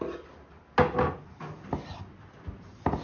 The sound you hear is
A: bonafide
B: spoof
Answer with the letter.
A